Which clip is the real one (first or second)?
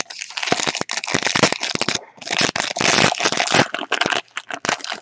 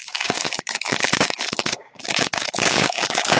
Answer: first